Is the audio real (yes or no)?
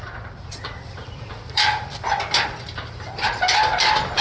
no